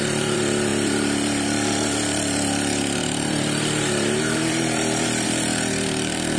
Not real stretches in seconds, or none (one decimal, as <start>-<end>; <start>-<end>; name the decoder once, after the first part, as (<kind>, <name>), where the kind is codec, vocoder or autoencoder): 0.0-6.4 (vocoder, BigVGAN v2)